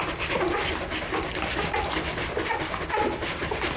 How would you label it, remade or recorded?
recorded